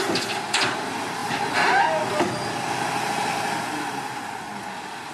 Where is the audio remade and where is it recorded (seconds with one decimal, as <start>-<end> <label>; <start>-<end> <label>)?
0.0-5.1 recorded